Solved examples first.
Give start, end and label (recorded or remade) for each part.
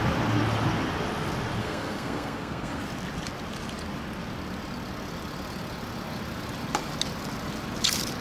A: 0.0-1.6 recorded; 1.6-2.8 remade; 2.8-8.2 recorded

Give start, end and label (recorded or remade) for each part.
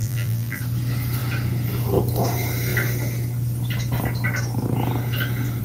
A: 0.0-0.6 remade; 0.6-5.6 recorded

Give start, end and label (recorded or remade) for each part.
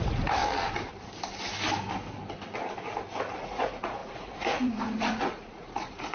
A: 0.0-0.4 remade; 0.4-3.4 recorded; 3.4-6.1 remade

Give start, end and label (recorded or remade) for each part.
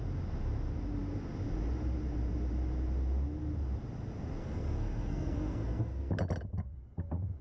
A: 0.0-4.4 recorded; 4.4-6.1 remade; 6.1-7.4 recorded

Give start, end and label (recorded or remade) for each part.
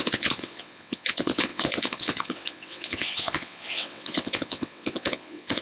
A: 0.0-5.6 remade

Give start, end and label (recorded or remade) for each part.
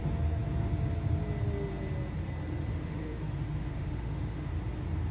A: 0.0-2.7 recorded; 2.7-3.3 remade; 3.3-3.7 recorded; 3.7-4.5 remade; 4.5-5.1 recorded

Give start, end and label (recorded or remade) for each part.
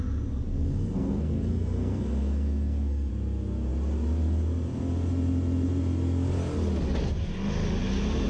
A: 0.0-0.5 recorded; 0.5-3.1 remade; 3.1-8.3 recorded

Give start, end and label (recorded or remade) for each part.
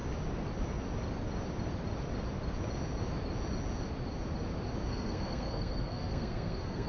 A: 0.0-4.9 recorded; 4.9-6.9 remade